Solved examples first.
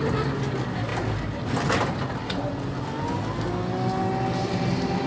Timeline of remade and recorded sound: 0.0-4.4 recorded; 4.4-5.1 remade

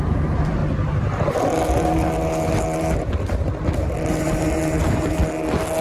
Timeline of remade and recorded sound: 0.0-0.6 remade; 0.6-4.1 recorded; 4.1-5.2 remade; 5.2-5.8 recorded

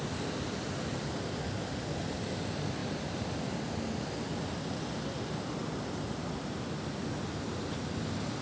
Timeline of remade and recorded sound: 0.0-2.8 recorded; 2.8-3.6 remade; 3.6-8.4 recorded